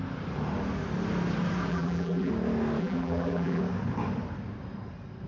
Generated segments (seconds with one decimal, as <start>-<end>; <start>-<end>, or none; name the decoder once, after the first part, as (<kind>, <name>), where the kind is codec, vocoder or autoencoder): 1.7-2.3 (vocoder, BigVGAN v2); 2.8-3.6